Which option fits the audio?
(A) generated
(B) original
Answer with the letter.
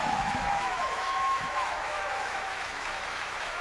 A